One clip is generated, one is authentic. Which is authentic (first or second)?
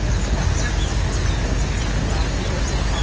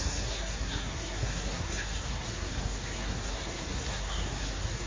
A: first